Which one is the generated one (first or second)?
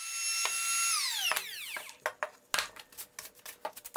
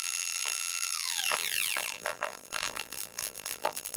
second